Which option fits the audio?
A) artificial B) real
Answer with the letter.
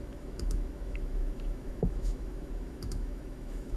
A